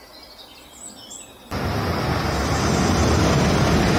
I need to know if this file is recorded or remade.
recorded